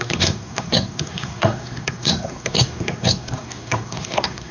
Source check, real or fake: fake